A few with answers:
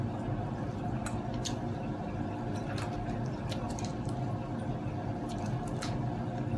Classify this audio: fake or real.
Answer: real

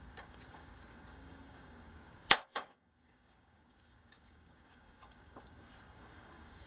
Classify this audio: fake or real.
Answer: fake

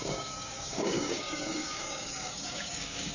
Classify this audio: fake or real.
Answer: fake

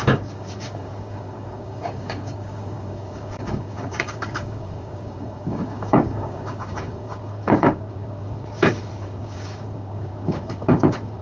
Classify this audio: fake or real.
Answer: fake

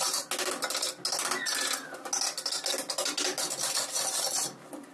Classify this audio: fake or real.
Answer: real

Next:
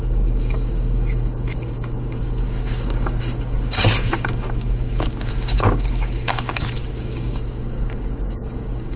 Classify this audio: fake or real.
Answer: fake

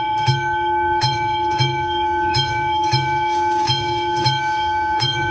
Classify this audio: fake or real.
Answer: fake